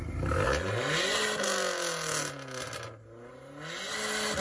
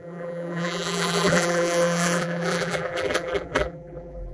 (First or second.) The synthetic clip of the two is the second